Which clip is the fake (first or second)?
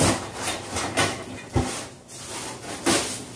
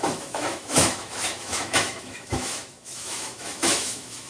second